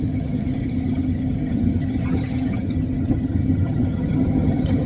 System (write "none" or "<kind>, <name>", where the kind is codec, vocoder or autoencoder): vocoder, HiFi-GAN